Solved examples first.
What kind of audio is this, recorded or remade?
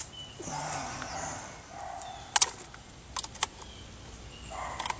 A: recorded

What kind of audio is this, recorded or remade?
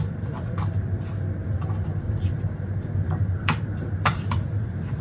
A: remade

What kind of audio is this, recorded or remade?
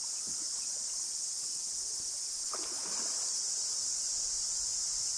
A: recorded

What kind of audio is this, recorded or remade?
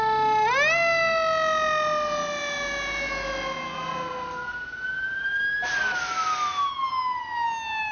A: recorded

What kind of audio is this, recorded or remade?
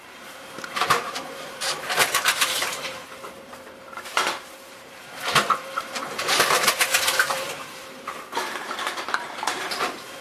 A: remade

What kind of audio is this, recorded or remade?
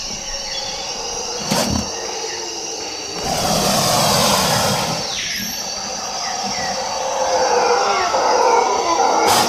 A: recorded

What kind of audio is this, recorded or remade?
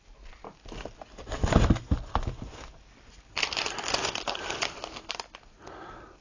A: recorded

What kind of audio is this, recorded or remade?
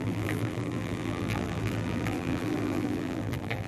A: remade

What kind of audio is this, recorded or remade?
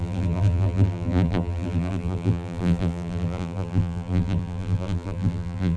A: remade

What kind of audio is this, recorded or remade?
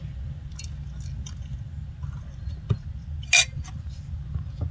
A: recorded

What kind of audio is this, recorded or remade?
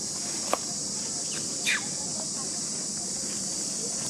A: recorded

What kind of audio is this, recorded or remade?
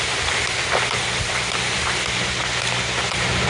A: recorded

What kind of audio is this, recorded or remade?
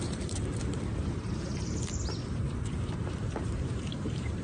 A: remade